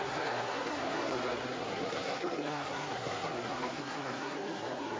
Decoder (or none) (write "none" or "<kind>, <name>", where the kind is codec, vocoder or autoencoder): codec, SNAC